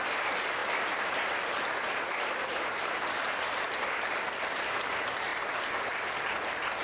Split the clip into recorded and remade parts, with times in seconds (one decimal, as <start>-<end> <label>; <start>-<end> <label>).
0.0-0.6 recorded; 0.6-4.7 remade; 4.7-6.8 recorded